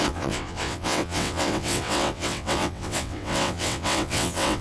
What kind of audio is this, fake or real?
fake